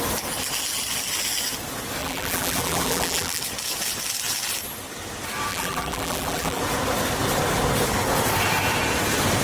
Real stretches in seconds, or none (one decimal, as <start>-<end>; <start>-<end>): 0.0-2.0; 3.4-5.5; 6.6-9.4